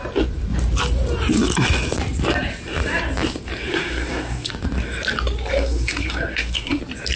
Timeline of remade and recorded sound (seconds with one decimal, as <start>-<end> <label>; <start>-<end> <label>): 0.0-3.7 recorded; 3.7-4.5 remade; 4.5-5.5 recorded; 5.5-6.8 remade; 6.8-7.2 recorded